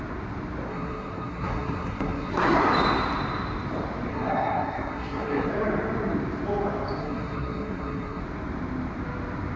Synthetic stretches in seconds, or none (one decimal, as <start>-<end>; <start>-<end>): 0.7-2.6; 4.1-5.5; 7.0-8.2